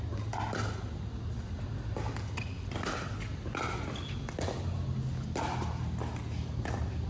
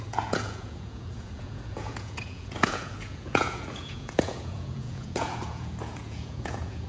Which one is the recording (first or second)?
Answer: first